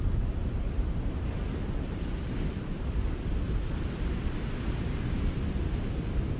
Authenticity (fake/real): real